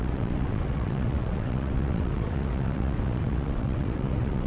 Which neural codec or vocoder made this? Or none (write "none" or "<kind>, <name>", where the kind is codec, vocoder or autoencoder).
vocoder, WaveNeXt